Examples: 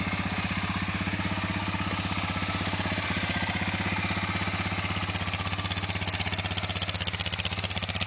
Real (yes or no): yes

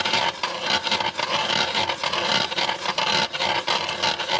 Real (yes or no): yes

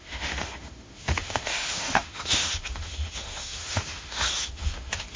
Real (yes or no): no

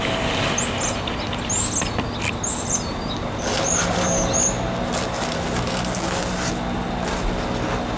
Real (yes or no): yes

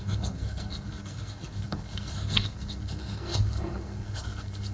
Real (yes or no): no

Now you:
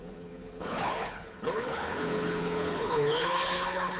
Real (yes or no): no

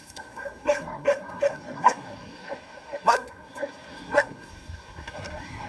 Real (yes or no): no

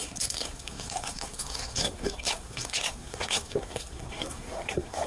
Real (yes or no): no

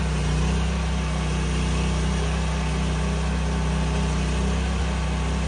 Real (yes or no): yes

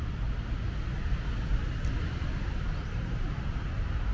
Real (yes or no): yes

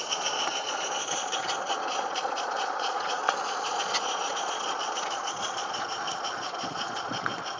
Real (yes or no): no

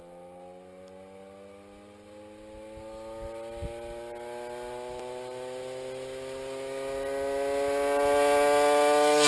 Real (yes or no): yes